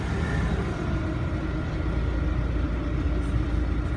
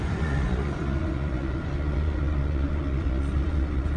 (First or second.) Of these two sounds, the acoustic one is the first